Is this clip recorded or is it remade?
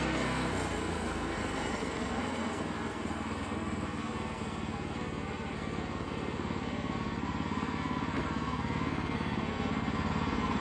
remade